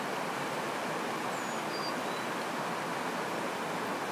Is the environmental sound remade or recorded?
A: recorded